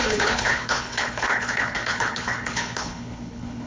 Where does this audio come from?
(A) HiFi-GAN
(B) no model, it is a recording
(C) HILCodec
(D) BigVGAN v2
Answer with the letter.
C